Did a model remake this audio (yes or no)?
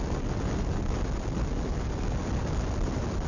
no